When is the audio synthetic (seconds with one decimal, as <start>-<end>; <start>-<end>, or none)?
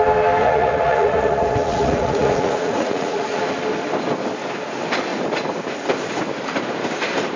0.4-3.4